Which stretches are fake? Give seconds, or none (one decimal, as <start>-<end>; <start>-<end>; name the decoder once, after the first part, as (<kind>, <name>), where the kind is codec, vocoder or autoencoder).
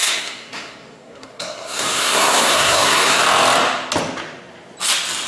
0.0-3.2 (codec, SNAC)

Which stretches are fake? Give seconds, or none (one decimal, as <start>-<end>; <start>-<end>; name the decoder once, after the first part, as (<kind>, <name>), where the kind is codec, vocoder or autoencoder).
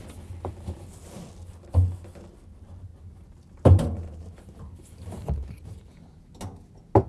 2.9-6.2 (vocoder, BigVGAN v2)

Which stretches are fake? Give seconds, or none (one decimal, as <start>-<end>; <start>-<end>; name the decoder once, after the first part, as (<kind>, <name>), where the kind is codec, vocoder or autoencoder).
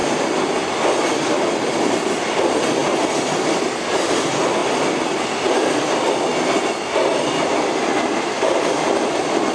1.1-2.8 (vocoder, BigVGAN v2); 3.8-4.6; 5.2-6.3; 7.1-9.5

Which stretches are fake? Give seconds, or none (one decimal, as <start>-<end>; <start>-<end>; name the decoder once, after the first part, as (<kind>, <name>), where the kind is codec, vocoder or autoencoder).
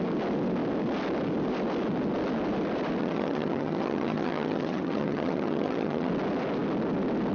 3.0-6.1 (vocoder, HiFi-GAN)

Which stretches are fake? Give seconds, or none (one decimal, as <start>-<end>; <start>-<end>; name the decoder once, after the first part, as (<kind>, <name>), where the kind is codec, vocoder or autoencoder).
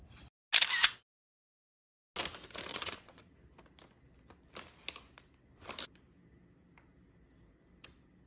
2.7-3.3 (vocoder, Vocos)